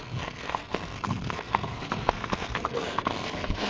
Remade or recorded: remade